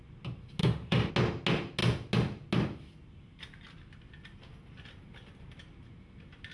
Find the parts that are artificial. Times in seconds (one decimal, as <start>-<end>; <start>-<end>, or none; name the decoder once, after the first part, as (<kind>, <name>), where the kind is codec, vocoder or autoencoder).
0.6-1.1 (autoencoder, DAC-VAE)